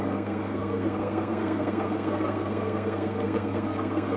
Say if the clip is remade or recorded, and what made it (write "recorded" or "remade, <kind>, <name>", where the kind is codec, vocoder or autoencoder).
remade, codec, SNAC